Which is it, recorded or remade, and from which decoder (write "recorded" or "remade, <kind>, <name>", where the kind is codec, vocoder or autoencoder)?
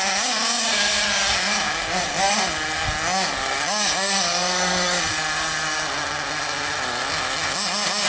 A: recorded